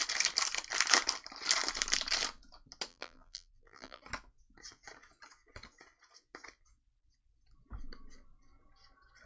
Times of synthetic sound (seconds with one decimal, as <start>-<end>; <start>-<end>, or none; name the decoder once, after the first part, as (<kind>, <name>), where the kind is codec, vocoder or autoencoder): 2.9-4.0 (vocoder, BigVGAN v2)